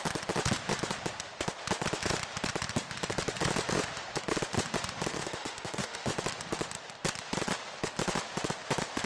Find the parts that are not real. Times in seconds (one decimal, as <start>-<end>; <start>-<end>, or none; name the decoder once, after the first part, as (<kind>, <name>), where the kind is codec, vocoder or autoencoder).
5.1-6.1 (autoencoder, DAC-VAE)